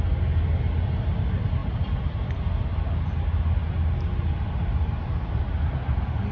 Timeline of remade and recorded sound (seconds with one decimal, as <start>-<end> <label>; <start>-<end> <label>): 0.0-6.3 recorded